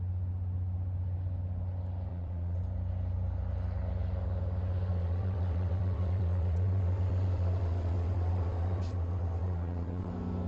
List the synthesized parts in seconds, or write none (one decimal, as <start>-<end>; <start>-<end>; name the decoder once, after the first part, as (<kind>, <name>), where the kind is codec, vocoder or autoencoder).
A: 2.1-2.6 (vocoder, WaveNeXt); 4.9-10.1